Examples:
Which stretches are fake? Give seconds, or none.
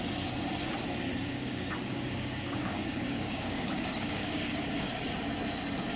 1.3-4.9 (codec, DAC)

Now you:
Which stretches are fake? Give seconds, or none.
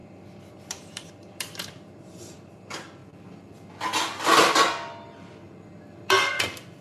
0.0-3.0 (vocoder, BigVGAN v2)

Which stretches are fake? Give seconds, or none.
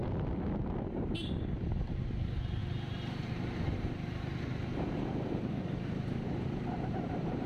2.2-7.5 (vocoder, BigVGAN v2)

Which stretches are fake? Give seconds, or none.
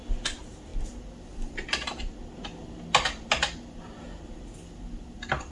none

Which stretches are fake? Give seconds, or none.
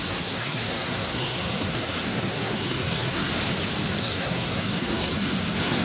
0.0-3.3 (codec, SNAC); 4.0-5.8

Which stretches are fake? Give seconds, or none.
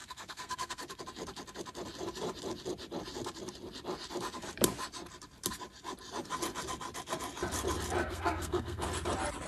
0.0-1.0 (codec, SNAC); 8.0-8.9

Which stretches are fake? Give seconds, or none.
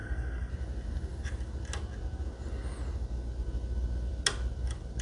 0.0-0.5 (codec, SNAC)